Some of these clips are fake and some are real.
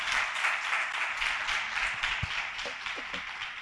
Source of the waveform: real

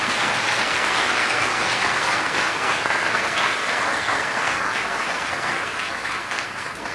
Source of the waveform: fake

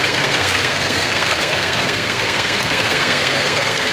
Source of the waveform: fake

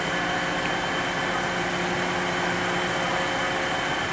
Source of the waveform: real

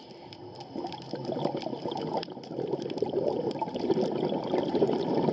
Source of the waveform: real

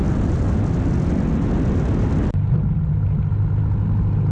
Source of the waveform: real